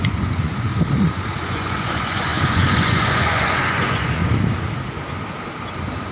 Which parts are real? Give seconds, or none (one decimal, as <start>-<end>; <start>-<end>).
0.7-1.4; 4.2-6.1